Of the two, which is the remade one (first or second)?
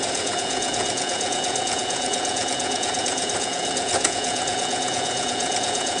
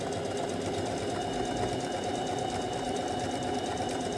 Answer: first